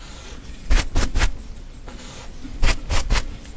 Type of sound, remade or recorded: recorded